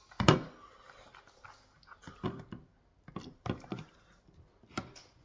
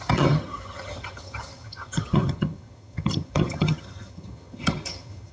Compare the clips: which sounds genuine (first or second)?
first